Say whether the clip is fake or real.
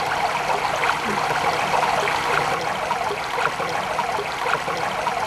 real